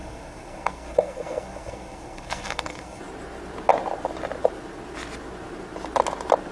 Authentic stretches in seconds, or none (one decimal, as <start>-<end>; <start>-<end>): 3.0-6.5